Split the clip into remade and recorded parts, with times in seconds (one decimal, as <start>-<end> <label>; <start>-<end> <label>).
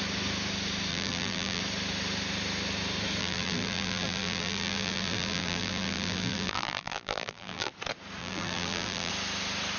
0.0-0.9 recorded; 0.9-1.6 remade; 1.6-3.2 recorded; 3.2-7.7 remade; 7.7-8.2 recorded; 8.2-9.1 remade; 9.1-9.8 recorded